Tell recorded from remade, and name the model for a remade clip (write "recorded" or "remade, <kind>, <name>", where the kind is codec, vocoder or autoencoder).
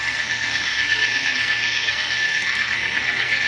remade, codec, SNAC